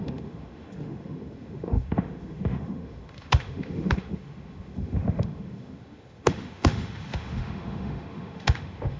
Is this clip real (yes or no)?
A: no